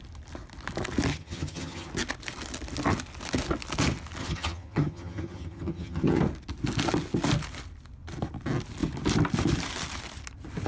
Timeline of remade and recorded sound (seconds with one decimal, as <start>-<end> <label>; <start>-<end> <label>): 0.0-1.1 recorded; 1.1-1.9 remade; 1.9-4.2 recorded; 4.2-6.2 remade; 6.2-10.7 recorded

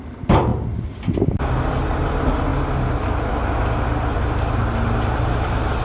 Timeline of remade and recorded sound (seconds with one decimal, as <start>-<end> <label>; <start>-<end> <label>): 0.0-5.8 recorded

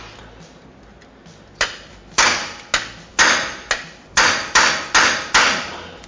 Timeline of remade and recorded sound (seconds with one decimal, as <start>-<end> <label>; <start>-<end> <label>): 0.0-6.1 recorded